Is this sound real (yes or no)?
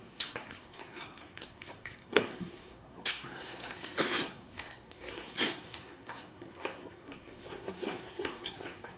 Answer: no